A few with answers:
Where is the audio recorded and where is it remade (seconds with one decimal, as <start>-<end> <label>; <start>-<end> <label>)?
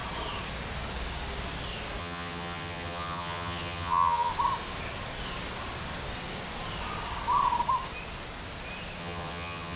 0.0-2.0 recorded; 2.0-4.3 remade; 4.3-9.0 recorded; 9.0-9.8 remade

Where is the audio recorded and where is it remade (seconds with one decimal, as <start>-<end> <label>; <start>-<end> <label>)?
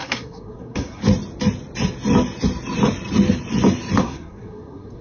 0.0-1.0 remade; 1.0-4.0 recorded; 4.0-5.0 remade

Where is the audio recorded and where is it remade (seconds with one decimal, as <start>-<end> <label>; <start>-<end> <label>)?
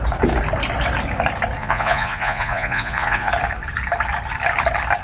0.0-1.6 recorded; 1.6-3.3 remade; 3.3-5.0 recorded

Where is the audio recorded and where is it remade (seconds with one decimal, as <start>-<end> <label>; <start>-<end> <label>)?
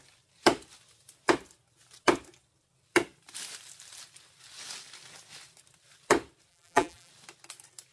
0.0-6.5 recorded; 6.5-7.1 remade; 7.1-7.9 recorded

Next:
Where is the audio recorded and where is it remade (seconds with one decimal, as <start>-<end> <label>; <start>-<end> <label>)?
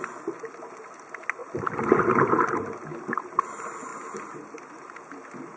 0.0-5.6 recorded